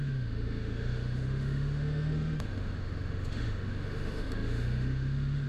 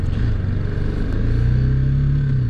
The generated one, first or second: first